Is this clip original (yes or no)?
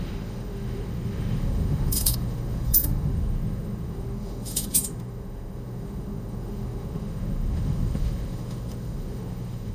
no